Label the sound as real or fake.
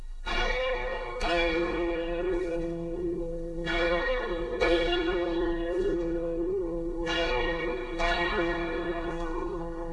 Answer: fake